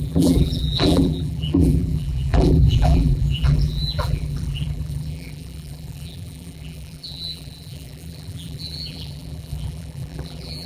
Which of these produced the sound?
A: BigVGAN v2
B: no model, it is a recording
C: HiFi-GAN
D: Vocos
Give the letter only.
A